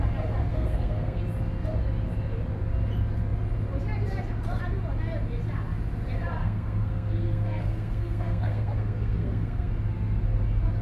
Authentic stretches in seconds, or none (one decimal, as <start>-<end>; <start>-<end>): 0.0-0.5; 1.2-6.4; 9.7-10.8